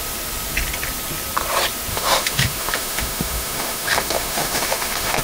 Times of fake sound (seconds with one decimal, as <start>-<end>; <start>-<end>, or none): 1.9-5.2

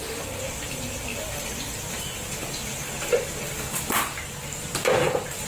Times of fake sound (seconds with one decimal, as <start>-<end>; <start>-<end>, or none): 1.1-3.8

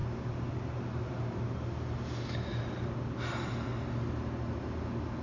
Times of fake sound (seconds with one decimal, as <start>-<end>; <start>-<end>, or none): none

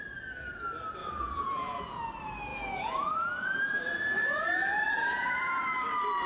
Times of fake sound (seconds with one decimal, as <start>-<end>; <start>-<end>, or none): 1.0-2.0; 2.5-5.6

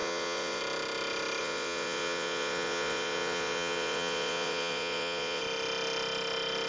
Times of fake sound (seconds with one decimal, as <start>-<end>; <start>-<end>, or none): 0.0-0.6; 1.4-5.4

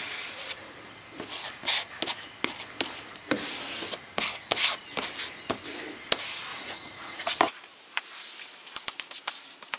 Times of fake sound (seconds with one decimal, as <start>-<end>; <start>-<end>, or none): 6.5-7.3

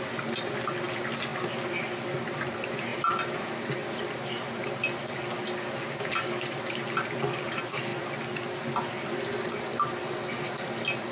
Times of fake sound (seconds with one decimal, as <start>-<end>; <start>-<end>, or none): none